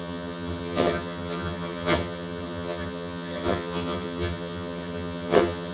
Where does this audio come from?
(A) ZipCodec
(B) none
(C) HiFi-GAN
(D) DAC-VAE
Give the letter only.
C